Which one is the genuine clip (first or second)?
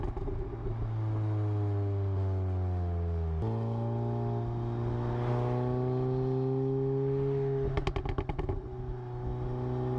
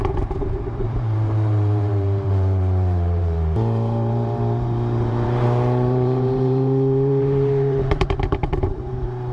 first